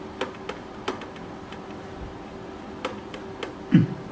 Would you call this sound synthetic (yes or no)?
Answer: no